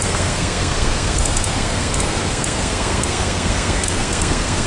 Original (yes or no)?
no